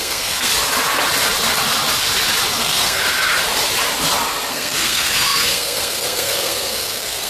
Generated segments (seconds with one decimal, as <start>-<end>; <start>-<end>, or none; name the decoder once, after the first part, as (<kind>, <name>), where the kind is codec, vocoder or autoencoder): 0.0-0.5 (codec, SNAC); 2.6-3.0; 4.5-7.3